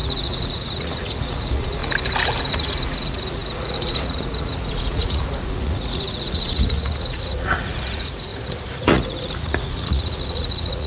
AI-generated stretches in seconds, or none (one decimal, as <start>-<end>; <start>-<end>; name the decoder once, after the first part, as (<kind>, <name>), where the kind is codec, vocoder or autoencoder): 0.0-1.8 (vocoder, Vocos); 2.4-8.3; 8.8-10.9